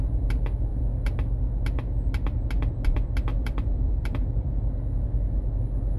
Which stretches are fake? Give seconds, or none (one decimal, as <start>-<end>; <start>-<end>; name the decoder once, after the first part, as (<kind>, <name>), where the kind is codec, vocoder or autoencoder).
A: 3.3-4.5 (vocoder, BigVGAN v2)

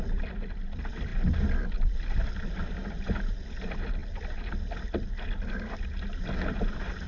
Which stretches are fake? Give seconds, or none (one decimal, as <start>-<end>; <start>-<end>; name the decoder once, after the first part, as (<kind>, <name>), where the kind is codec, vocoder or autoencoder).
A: none

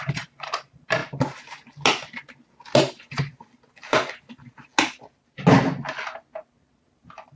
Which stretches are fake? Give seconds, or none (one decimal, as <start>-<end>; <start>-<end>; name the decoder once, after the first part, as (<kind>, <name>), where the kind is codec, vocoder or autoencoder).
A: 0.0-1.0 (vocoder, BigVGAN v2); 2.8-4.7; 6.7-7.4

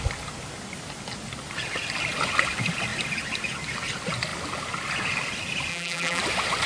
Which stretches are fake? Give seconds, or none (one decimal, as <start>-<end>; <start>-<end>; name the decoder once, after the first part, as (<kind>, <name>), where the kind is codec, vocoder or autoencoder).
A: 5.7-6.2 (vocoder, BigVGAN v2)

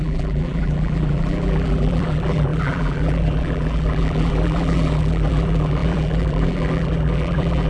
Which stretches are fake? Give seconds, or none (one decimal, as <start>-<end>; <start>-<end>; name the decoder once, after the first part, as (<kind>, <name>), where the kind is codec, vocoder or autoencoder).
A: 0.0-7.7 (vocoder, BigVGAN v2)

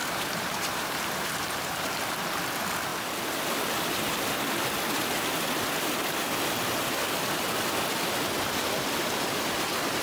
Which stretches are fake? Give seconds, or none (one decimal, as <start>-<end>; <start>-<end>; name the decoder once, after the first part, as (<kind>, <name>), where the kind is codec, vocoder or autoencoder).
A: 0.0-1.9 (vocoder, BigVGAN v2)

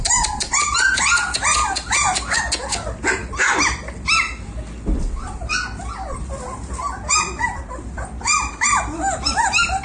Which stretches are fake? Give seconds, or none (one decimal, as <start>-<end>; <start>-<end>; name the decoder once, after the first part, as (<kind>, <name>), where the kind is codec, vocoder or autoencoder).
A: 0.0-5.5 (vocoder, BigVGAN v2); 7.4-9.8

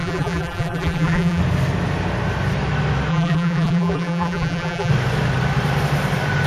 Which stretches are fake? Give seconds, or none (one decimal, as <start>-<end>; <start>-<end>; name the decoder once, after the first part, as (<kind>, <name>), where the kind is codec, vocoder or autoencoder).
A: 0.0-1.4 (vocoder, BigVGAN v2); 3.1-4.9